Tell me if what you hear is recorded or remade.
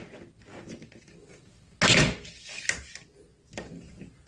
recorded